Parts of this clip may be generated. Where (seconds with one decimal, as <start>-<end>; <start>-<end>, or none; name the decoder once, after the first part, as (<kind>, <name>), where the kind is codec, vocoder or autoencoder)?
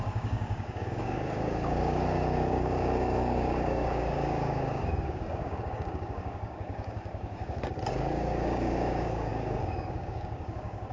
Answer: 0.0-10.9 (codec, DAC)